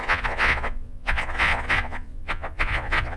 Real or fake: fake